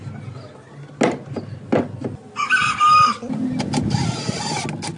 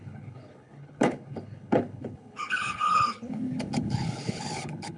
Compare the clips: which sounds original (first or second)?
first